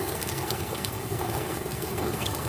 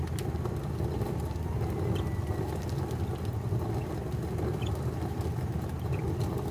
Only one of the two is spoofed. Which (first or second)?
first